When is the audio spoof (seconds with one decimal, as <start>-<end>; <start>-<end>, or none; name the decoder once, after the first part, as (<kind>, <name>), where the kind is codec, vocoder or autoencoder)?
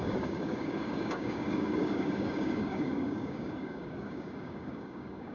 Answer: 0.0-5.3 (codec, DAC)